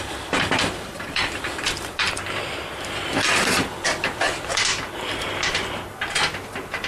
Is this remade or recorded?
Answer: remade